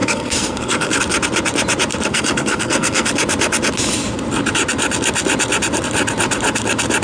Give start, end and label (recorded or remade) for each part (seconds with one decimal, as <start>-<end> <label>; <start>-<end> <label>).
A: 0.0-1.0 remade; 1.0-2.1 recorded; 2.1-3.1 remade; 3.1-7.0 recorded